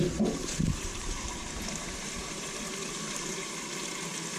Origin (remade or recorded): remade